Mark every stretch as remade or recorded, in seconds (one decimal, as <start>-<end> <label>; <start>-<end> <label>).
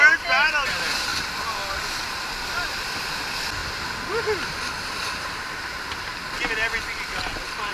0.0-7.7 recorded